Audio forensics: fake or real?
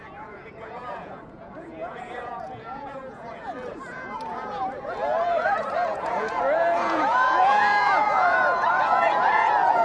fake